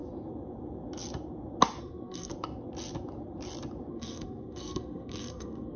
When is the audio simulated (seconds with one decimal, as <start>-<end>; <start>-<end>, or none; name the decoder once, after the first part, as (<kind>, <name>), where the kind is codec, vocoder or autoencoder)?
1.8-2.3 (codec, SNAC); 3.9-5.8